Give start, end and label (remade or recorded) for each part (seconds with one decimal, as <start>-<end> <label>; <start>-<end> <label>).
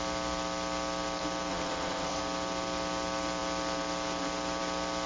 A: 0.0-1.5 recorded; 1.5-2.2 remade; 2.2-5.1 recorded